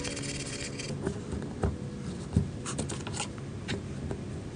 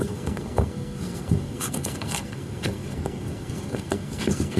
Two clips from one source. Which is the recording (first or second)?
first